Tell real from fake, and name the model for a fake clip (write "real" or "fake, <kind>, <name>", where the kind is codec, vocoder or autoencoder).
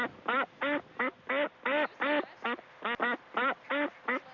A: real